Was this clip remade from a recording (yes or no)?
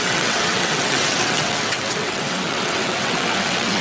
yes